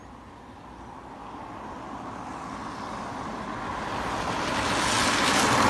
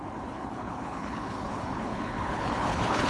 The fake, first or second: second